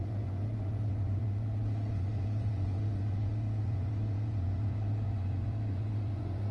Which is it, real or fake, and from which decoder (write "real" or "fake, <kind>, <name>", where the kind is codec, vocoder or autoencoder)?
fake, vocoder, Vocos